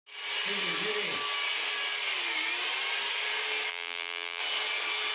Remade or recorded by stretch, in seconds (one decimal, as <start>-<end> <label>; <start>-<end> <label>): 0.0-3.7 recorded; 3.7-4.4 remade; 4.4-5.1 recorded